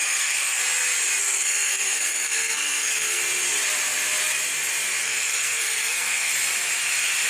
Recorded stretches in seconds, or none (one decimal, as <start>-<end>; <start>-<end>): 0.6-1.2; 3.2-5.0; 6.3-7.3